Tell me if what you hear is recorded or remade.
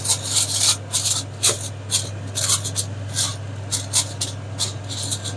recorded